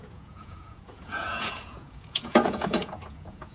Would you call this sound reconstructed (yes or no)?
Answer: yes